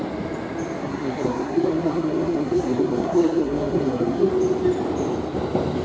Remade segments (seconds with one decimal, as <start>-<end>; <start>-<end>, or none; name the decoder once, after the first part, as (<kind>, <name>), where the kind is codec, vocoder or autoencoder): 0.8-4.3 (codec, SNAC)